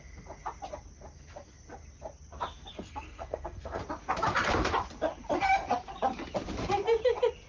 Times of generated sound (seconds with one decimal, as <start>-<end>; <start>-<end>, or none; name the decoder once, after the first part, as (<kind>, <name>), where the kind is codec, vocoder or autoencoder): 2.7-3.8 (codec, SNAC)